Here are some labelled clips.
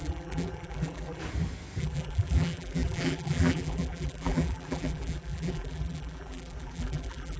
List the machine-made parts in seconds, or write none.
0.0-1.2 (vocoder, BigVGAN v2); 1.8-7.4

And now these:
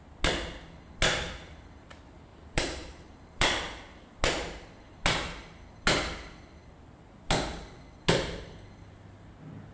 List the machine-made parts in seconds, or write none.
2.3-4.1 (vocoder, BigVGAN v2)

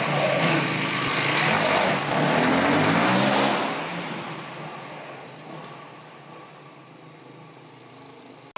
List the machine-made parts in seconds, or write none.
3.9-4.5 (vocoder, BigVGAN v2)

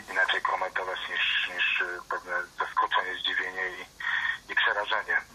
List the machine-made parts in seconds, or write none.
none

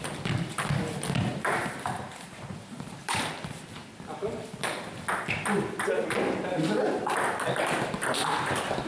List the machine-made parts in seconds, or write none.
1.3-3.3 (vocoder, BigVGAN v2)

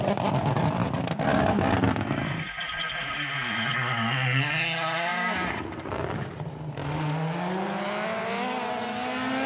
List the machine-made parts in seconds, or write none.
none

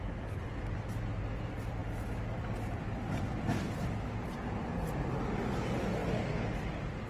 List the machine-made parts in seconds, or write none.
none